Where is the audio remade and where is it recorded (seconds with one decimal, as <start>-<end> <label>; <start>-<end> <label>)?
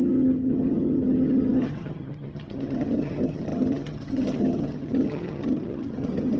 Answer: 0.0-6.4 remade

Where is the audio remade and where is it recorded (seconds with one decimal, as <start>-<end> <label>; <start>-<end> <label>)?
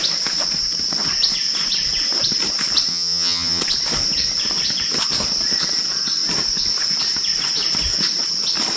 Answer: 0.0-2.9 recorded; 2.9-3.6 remade; 3.6-8.8 recorded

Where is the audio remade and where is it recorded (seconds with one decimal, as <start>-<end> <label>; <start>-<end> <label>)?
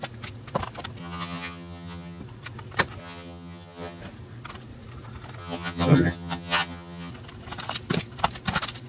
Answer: 0.0-1.0 recorded; 1.0-2.2 remade; 2.2-3.0 recorded; 3.0-4.0 remade; 4.0-5.4 recorded; 5.4-7.1 remade; 7.1-8.9 recorded